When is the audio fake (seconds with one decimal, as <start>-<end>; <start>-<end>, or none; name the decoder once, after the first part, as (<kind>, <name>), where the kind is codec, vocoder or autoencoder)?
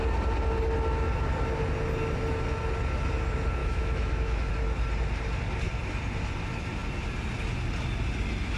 3.6-4.5 (autoencoder, DAC-VAE)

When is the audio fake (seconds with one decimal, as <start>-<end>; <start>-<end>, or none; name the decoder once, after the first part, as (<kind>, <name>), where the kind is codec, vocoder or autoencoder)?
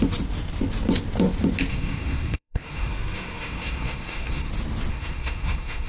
1.7-4.5 (codec, SNAC); 4.9-5.9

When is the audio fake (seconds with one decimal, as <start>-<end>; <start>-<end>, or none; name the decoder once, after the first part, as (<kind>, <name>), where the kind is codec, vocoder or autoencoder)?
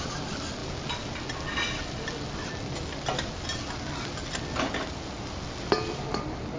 none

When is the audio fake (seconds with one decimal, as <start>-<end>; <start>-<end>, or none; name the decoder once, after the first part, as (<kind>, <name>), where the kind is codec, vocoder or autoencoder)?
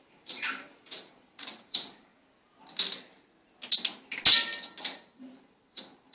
0.0-2.1 (vocoder, BigVGAN v2); 4.8-6.1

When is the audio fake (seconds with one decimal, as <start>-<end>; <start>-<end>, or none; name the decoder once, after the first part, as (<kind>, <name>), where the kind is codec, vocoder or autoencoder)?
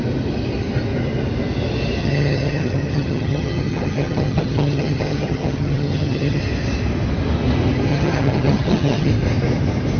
2.0-6.4 (vocoder, HiFi-GAN); 7.9-9.1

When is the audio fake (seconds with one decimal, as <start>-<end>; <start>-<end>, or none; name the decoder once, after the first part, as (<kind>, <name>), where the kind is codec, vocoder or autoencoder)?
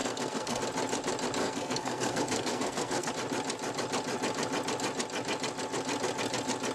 0.0-0.6 (codec, SNAC); 1.4-3.1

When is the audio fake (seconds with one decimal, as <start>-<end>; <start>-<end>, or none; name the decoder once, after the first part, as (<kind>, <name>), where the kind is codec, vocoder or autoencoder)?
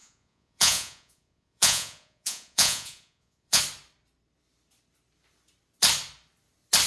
0.0-3.6 (vocoder, Vocos)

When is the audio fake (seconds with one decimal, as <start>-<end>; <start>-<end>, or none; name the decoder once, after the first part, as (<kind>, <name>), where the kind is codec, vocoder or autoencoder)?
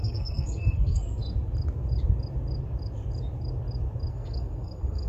0.0-1.2 (codec, SNAC); 4.1-5.1